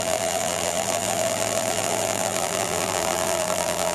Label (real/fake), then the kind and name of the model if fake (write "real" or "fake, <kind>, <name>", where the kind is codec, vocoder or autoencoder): fake, vocoder, BigVGAN v2